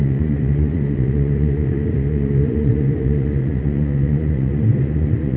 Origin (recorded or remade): remade